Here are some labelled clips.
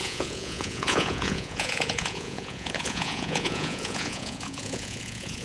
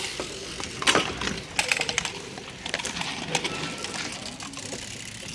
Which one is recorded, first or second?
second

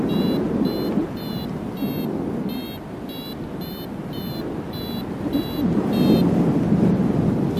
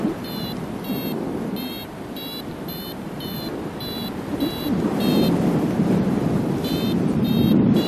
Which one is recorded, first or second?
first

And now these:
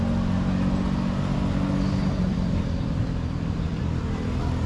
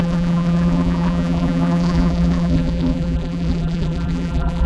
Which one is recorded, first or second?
first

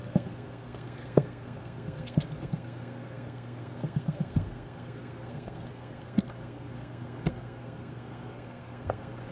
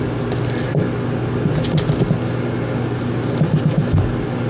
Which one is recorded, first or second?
second